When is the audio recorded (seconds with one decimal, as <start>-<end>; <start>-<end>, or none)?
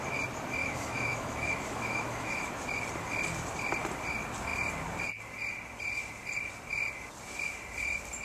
0.0-0.6; 2.5-8.2